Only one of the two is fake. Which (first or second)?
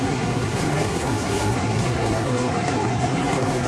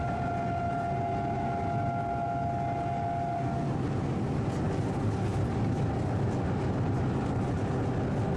first